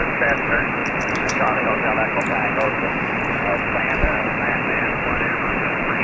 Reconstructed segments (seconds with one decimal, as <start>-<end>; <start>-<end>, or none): 0.0-6.0